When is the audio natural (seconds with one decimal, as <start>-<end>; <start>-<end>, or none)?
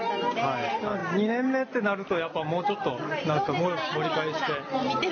0.0-5.1